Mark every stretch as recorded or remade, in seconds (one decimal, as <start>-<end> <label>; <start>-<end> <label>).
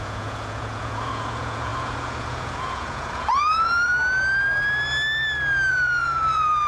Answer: 0.0-3.9 remade; 3.9-5.7 recorded; 5.7-6.7 remade